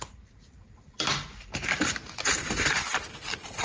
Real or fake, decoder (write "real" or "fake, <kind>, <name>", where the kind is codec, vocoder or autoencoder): fake, vocoder, BigVGAN v2